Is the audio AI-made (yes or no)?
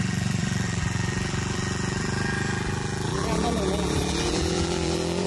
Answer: yes